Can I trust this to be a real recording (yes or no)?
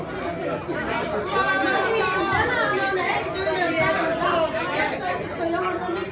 yes